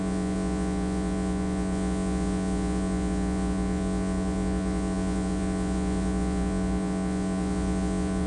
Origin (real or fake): fake